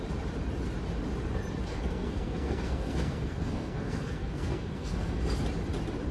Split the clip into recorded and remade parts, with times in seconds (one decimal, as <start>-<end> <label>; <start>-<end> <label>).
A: 0.0-1.7 recorded; 1.7-5.2 remade; 5.2-6.1 recorded